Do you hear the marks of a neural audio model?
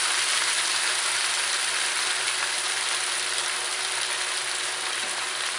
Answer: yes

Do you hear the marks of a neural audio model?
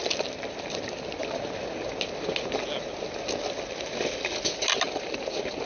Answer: no